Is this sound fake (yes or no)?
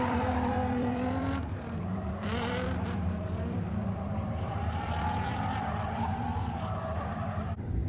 yes